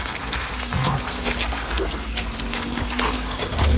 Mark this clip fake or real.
fake